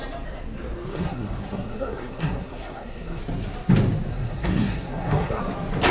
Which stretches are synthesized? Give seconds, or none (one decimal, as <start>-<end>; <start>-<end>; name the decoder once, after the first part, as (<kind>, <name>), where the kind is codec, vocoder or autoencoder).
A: 0.9-3.2 (codec, SNAC); 4.1-5.4